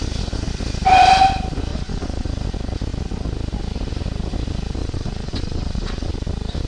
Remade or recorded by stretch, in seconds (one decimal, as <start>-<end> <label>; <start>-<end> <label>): 0.0-1.7 recorded; 1.7-2.3 remade; 2.3-4.8 recorded; 4.8-6.1 remade; 6.1-6.7 recorded